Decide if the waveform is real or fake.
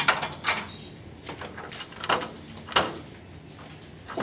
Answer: real